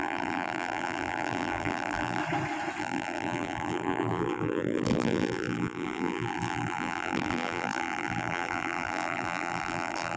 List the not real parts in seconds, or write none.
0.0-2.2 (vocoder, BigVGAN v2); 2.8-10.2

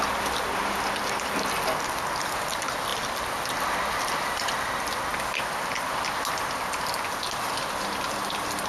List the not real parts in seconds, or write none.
2.9-5.0 (vocoder, BigVGAN v2)